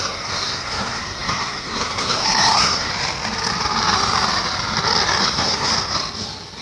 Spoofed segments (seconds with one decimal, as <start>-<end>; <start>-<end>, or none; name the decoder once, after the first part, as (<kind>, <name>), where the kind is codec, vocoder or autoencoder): 0.0-2.9 (codec, SNAC); 5.2-5.7